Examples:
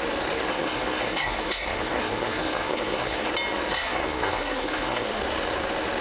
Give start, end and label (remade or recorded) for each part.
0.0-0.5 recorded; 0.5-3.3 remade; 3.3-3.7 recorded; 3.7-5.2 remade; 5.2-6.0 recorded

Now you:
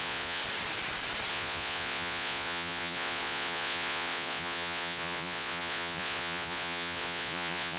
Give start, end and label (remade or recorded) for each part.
0.0-0.4 remade; 0.4-1.3 recorded; 1.3-7.8 remade